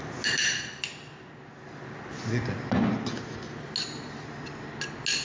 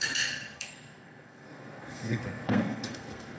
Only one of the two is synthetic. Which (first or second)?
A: second